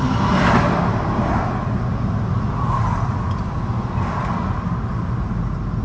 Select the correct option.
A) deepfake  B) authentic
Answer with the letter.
B